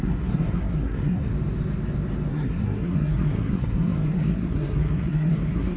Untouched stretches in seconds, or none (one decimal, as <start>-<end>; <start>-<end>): 1.3-2.3